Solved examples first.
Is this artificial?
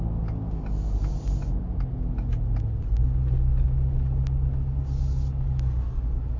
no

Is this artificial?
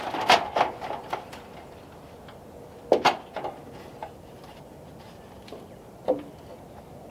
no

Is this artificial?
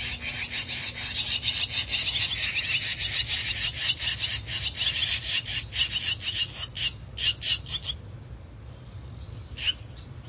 no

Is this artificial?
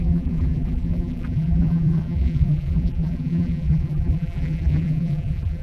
yes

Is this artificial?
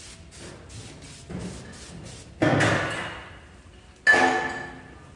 no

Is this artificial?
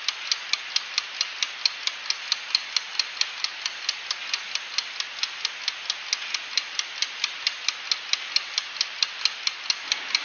no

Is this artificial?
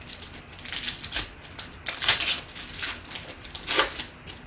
no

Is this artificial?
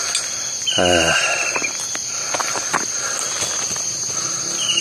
no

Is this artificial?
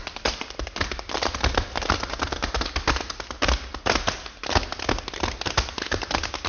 no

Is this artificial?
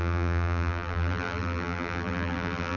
yes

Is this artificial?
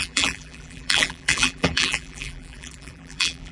yes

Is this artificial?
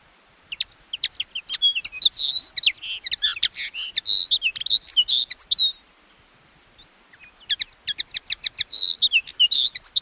no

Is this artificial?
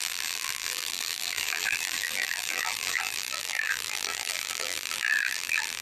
yes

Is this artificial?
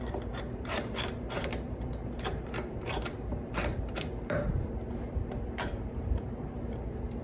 yes